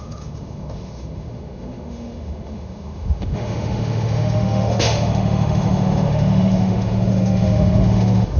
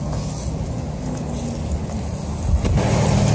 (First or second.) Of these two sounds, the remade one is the first